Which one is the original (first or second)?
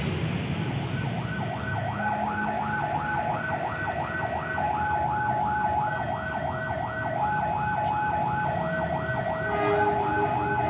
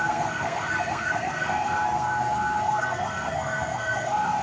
first